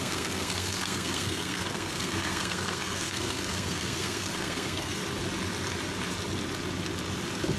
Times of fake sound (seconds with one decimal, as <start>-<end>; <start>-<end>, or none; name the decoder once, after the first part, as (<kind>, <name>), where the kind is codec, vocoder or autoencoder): 0.0-5.0 (codec, SNAC)